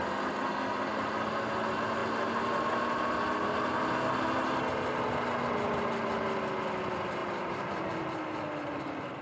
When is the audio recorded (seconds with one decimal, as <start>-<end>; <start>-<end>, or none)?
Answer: 0.0-7.2; 7.8-9.2